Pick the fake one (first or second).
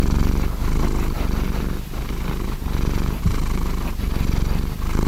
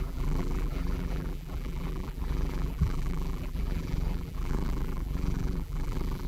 second